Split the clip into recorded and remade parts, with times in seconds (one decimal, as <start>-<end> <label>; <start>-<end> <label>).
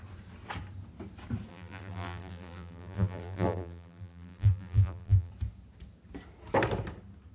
0.0-1.5 recorded; 1.5-5.3 remade; 5.3-7.3 recorded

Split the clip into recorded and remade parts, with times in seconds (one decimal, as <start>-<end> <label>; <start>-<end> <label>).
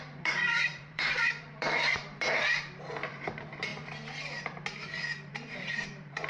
0.0-3.7 remade; 3.7-5.3 recorded; 5.3-6.3 remade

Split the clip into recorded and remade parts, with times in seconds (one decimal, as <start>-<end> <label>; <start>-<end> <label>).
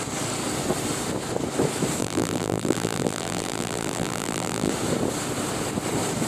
0.0-2.0 recorded; 2.0-4.7 remade; 4.7-6.3 recorded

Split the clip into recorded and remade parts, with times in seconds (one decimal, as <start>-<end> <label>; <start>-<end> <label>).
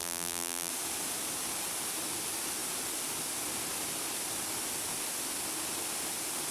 0.0-0.7 remade; 0.7-6.5 recorded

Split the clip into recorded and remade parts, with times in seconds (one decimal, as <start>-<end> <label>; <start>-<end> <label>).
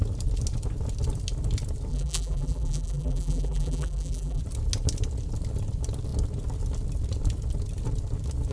0.0-1.9 recorded; 1.9-4.4 remade; 4.4-8.5 recorded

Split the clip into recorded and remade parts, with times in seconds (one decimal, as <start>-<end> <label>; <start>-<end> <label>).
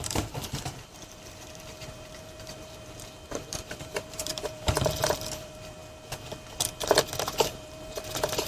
0.0-5.8 remade; 5.8-7.3 recorded; 7.3-8.5 remade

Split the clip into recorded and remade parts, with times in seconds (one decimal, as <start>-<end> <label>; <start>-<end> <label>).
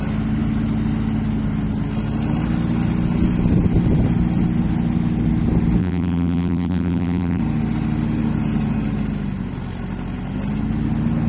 0.0-5.8 recorded; 5.8-7.4 remade; 7.4-11.3 recorded